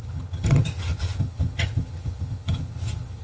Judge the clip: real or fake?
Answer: fake